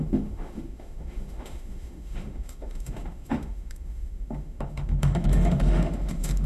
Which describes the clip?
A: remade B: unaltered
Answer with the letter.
A